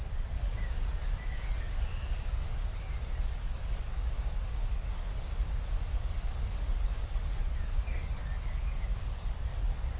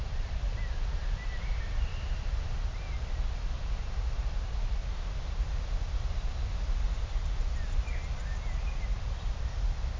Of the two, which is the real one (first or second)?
second